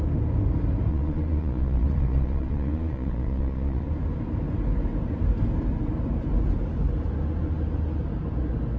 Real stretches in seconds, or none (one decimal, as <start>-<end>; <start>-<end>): 0.0-0.9; 3.9-8.8